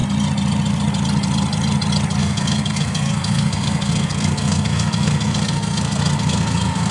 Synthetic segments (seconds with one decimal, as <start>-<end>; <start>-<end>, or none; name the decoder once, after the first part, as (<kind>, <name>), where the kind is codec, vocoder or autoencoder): 2.2-6.9 (codec, SNAC)